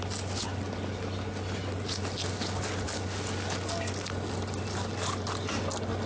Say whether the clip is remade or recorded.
recorded